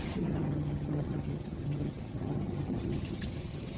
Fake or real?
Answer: fake